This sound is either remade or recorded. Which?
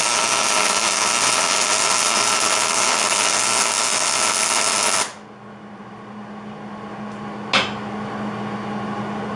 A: recorded